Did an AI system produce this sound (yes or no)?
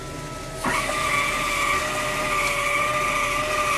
no